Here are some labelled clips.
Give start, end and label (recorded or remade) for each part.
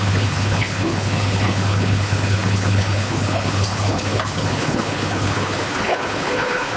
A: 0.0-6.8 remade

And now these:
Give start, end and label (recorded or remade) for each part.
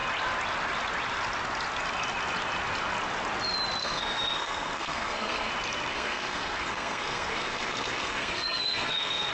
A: 0.0-3.8 recorded; 3.8-5.5 remade; 5.5-5.9 recorded; 5.9-9.3 remade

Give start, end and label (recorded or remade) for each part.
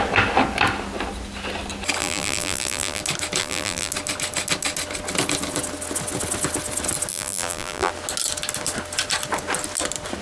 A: 0.0-2.0 recorded; 2.0-3.0 remade; 3.0-3.4 recorded; 3.4-3.9 remade; 3.9-7.1 recorded; 7.1-7.9 remade; 7.9-10.2 recorded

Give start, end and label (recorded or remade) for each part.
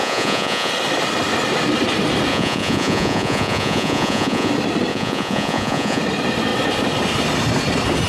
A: 0.0-0.7 remade; 0.7-2.3 recorded; 2.3-4.5 remade; 4.5-4.9 recorded; 4.9-6.0 remade; 6.0-8.1 recorded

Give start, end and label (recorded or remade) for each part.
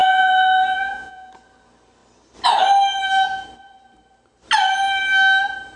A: 0.0-1.3 remade; 1.3-5.8 recorded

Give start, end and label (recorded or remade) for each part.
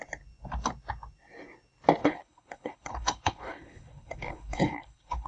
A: 0.0-2.0 recorded; 2.0-5.3 remade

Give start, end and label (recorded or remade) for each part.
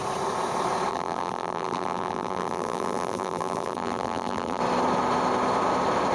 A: 0.0-0.9 recorded; 0.9-4.6 remade; 4.6-6.1 recorded